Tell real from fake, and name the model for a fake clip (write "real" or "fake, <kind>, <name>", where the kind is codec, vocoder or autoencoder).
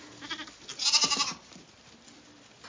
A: real